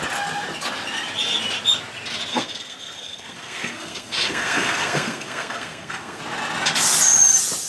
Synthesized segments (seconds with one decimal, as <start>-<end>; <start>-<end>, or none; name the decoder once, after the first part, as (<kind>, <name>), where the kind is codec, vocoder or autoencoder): 2.3-6.2 (codec, SNAC)